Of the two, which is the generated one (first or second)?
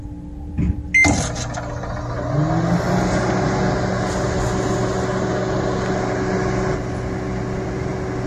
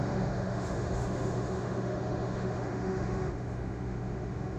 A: second